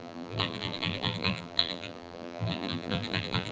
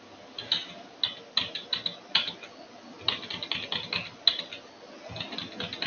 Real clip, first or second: second